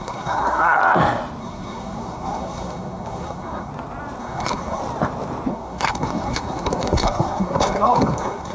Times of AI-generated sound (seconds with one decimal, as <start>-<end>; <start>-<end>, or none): 0.0-0.8; 1.4-3.7; 4.2-4.8; 5.5-8.5